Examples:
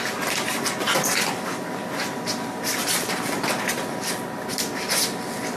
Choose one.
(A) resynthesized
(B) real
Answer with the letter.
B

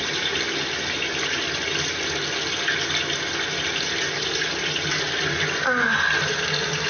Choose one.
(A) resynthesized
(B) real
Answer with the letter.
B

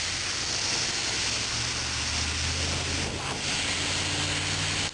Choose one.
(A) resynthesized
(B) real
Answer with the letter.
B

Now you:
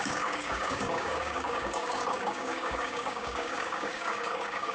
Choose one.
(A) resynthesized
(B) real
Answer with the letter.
A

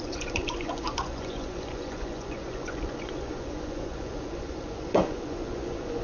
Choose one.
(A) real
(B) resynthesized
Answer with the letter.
B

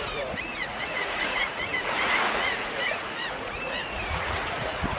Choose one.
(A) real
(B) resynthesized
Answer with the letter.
B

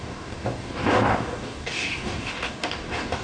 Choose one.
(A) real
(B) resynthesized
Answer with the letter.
B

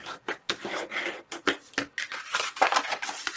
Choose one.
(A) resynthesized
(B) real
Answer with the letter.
B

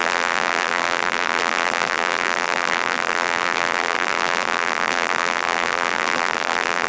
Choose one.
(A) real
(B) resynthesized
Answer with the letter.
B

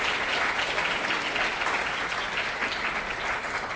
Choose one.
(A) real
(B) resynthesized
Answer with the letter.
A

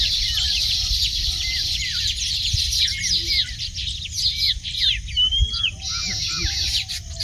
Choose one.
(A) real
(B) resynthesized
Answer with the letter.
A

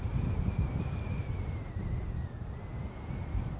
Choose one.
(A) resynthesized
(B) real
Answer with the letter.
B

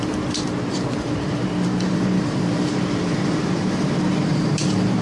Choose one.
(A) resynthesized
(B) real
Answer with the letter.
A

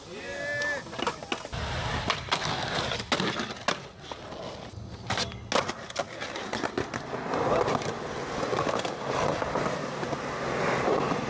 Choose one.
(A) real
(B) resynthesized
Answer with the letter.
A